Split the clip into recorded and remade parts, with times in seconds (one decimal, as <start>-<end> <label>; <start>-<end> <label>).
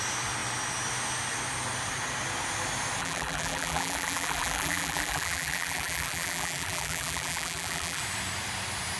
0.0-3.0 recorded; 3.0-8.0 remade; 8.0-9.0 recorded